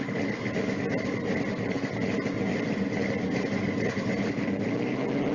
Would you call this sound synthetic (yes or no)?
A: no